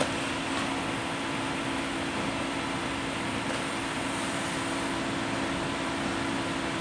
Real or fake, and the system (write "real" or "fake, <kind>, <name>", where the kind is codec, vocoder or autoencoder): real